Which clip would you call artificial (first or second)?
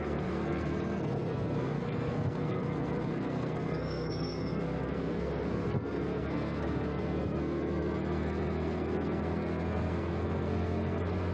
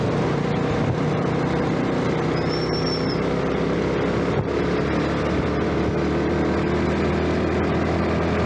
first